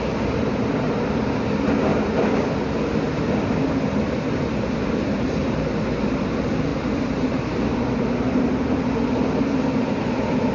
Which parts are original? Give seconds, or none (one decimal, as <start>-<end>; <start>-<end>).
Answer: 0.0-6.7; 7.4-10.5